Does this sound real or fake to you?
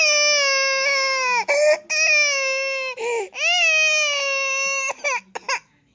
real